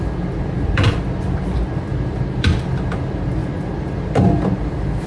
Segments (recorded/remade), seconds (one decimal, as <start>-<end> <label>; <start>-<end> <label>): 0.0-1.9 recorded; 1.9-2.5 remade; 2.5-5.1 recorded